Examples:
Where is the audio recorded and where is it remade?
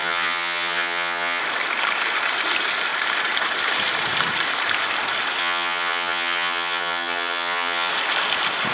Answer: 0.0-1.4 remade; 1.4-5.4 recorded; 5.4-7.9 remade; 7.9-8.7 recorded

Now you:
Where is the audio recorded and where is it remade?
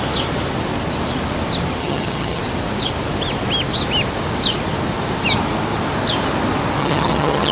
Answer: 0.0-1.8 recorded; 1.8-2.4 remade; 2.4-6.8 recorded; 6.8-7.5 remade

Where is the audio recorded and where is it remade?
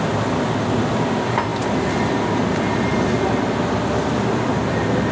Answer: 0.0-5.1 recorded